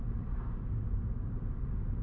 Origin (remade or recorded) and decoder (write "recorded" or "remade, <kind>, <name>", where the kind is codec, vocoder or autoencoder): remade, vocoder, BigVGAN v2